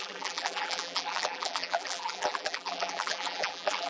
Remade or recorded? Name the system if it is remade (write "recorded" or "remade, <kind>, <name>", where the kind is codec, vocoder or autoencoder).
remade, vocoder, BigVGAN v2